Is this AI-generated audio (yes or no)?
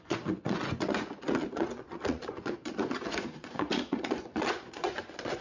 yes